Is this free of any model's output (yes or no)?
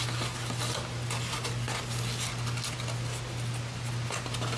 yes